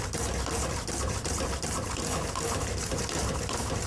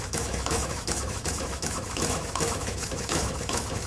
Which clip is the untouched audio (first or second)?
first